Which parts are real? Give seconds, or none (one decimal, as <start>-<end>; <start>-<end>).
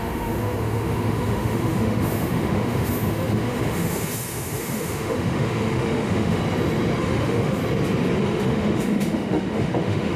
6.4-7.0; 7.6-8.2